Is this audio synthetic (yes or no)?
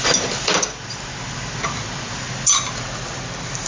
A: no